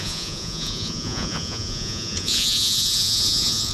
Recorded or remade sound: remade